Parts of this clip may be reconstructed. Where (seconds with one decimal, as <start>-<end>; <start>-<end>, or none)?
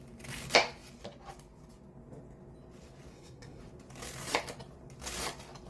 3.1-3.6